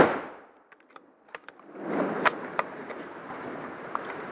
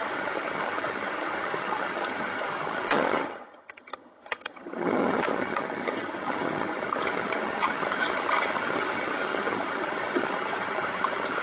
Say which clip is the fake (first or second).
second